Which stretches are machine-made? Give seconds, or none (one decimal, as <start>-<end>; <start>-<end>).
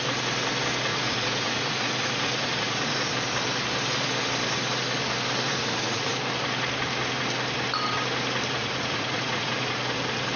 0.9-3.1; 5.5-6.1; 8.6-9.7